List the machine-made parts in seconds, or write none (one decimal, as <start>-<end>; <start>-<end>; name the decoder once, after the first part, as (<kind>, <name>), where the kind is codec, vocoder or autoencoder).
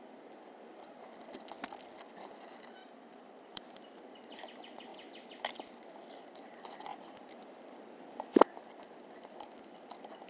2.8-3.6 (vocoder, BigVGAN v2); 6.9-8.4